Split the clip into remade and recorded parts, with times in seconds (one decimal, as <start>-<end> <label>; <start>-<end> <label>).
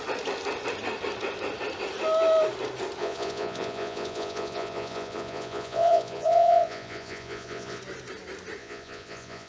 0.0-3.0 recorded; 3.0-7.8 remade; 7.8-8.6 recorded; 8.6-9.5 remade